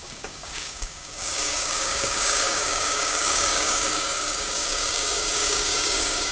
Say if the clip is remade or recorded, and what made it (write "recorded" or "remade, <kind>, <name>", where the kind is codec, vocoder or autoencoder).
remade, codec, DAC